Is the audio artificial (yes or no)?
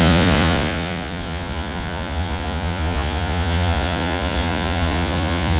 yes